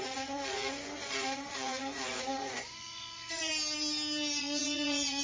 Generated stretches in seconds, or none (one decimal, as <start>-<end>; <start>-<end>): 0.0-3.5; 4.4-5.2